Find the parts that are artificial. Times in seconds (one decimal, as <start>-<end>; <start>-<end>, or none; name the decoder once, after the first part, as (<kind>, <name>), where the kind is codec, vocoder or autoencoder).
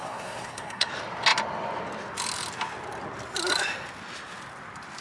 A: 0.0-0.9 (codec, SNAC)